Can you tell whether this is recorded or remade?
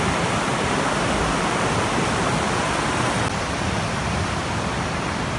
recorded